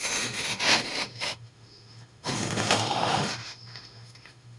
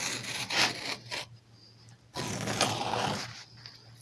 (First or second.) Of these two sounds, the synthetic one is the first